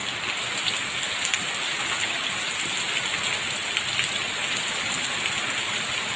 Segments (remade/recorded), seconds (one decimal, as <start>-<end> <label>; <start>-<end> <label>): 0.0-6.2 recorded